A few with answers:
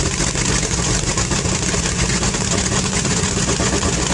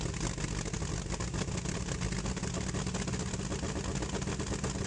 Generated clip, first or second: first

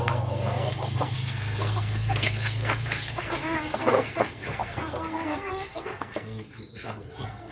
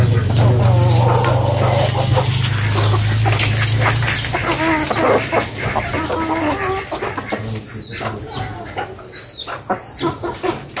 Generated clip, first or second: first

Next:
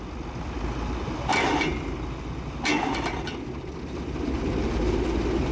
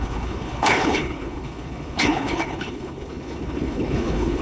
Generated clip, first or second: second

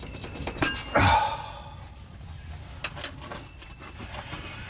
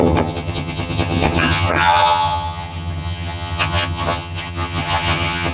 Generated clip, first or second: second